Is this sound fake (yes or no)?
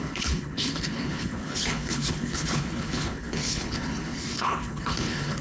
yes